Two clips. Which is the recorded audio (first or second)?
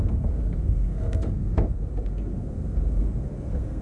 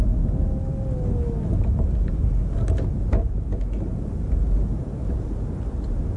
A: second